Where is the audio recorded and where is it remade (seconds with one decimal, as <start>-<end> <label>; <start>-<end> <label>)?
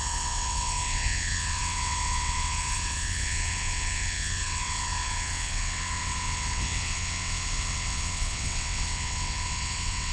0.0-10.1 remade